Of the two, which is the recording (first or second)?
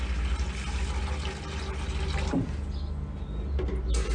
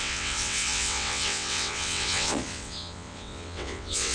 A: first